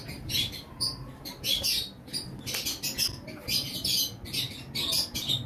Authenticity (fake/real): fake